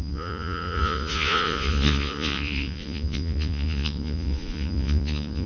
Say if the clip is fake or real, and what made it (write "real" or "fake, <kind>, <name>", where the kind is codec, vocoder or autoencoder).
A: fake, vocoder, Vocos